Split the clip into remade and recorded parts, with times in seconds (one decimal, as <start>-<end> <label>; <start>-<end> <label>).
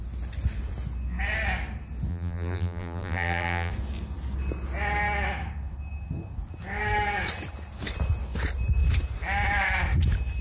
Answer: 0.0-2.1 recorded; 2.1-3.7 remade; 3.7-10.4 recorded